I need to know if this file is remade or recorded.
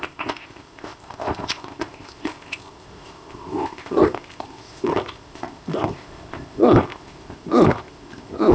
remade